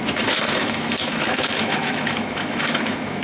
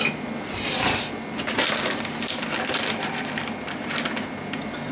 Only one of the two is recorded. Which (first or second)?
second